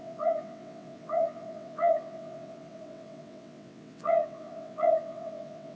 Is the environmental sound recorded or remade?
remade